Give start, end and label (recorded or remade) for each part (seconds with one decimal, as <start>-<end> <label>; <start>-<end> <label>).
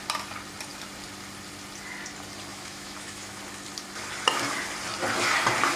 0.0-2.5 recorded; 2.5-3.4 remade; 3.4-5.8 recorded